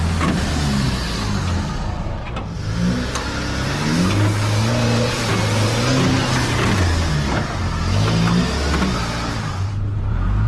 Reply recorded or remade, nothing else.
recorded